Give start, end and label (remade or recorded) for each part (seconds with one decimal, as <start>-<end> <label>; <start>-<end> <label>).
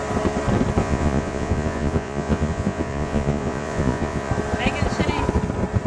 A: 0.0-0.8 recorded; 0.8-4.3 remade; 4.3-5.9 recorded